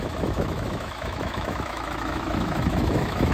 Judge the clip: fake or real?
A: fake